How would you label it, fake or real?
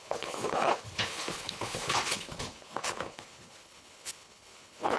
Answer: fake